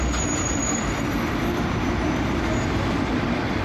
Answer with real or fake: fake